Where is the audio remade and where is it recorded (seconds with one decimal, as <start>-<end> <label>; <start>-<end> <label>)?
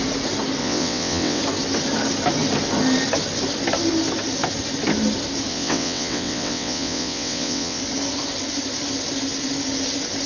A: 0.0-0.6 recorded; 0.6-1.4 remade; 1.4-5.5 recorded; 5.5-7.8 remade; 7.8-10.3 recorded